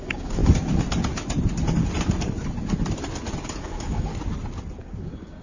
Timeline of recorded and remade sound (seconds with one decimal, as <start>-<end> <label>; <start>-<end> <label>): 0.0-0.4 remade; 0.4-3.6 recorded; 3.6-4.1 remade; 4.1-4.8 recorded; 4.8-5.4 remade